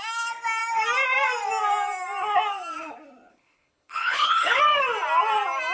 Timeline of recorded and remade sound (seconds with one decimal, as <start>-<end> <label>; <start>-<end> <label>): 0.0-3.3 recorded; 3.3-4.6 remade; 4.6-5.7 recorded

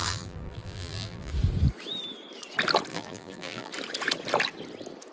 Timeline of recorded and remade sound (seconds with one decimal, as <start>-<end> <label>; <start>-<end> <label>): 0.0-1.3 remade; 1.3-2.9 recorded; 2.9-3.7 remade; 3.7-5.1 recorded